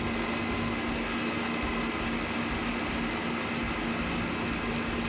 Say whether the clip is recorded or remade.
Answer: recorded